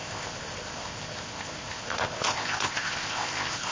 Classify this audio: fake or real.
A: fake